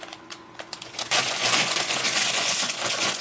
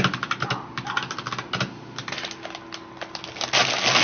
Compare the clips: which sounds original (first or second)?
second